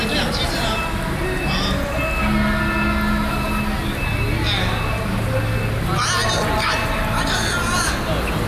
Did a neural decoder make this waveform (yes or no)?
no